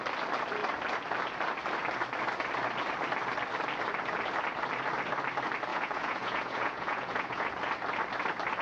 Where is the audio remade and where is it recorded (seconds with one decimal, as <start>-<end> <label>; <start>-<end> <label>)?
0.0-5.7 recorded; 5.7-7.5 remade; 7.5-8.6 recorded